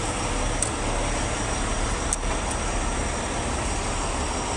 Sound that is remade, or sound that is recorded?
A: recorded